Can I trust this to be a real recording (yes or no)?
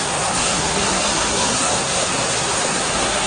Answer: no